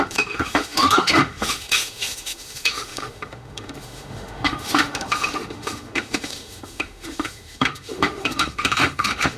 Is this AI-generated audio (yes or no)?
yes